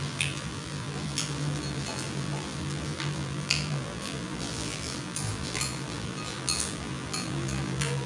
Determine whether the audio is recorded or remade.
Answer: remade